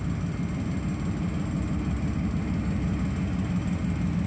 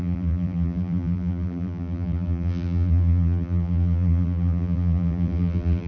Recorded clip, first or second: first